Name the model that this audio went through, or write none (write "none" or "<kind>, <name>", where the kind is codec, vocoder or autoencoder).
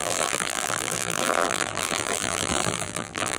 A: vocoder, BigVGAN v2